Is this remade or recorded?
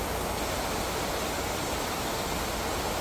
recorded